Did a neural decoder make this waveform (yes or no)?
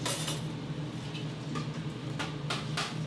no